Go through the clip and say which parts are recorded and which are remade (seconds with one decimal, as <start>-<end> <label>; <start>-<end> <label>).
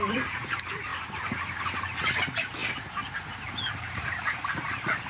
0.0-2.6 remade; 2.6-3.7 recorded; 3.7-5.1 remade